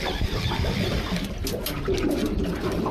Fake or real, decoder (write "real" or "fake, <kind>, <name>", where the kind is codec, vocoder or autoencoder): real